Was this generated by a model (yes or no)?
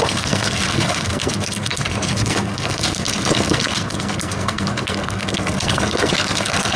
yes